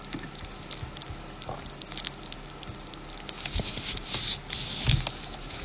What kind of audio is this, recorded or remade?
recorded